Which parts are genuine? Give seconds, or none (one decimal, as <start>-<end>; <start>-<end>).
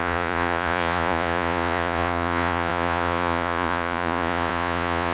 none